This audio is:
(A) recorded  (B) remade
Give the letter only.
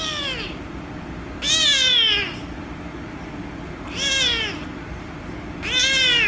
A